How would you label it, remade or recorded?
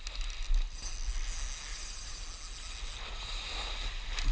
recorded